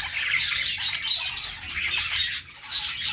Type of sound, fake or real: real